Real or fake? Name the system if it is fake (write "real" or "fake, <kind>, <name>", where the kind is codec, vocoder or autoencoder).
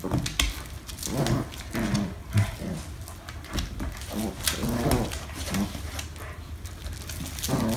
real